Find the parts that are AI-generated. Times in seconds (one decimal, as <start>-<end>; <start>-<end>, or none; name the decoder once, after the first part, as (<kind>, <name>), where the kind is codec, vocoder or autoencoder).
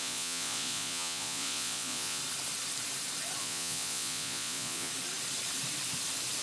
0.0-2.2 (vocoder, Vocos); 3.4-4.9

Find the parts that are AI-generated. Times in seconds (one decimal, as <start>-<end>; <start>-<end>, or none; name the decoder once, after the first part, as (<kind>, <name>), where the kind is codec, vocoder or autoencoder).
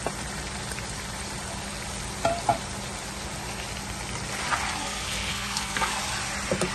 4.8-6.0 (codec, SNAC)